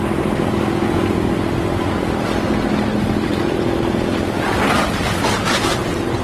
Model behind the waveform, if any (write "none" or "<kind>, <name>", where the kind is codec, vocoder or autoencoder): none